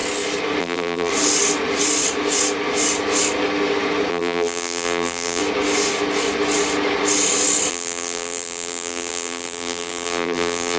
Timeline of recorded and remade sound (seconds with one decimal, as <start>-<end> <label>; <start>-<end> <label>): 0.0-0.6 recorded; 0.6-1.1 remade; 1.1-4.1 recorded; 4.1-5.4 remade; 5.4-7.7 recorded; 7.7-10.8 remade